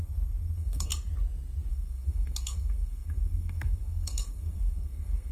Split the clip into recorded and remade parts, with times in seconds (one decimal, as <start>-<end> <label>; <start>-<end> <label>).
0.0-0.9 remade; 0.9-1.7 recorded; 1.7-5.3 remade